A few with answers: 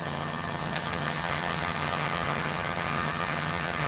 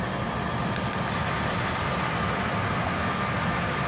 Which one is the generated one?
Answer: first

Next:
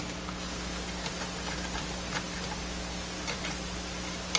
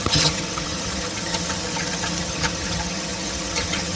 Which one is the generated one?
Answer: second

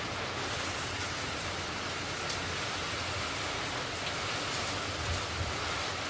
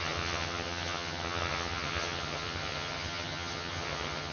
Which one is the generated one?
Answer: second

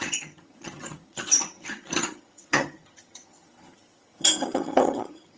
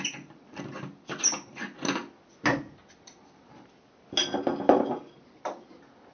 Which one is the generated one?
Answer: first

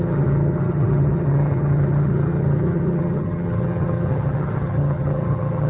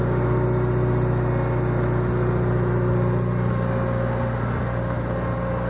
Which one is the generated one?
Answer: first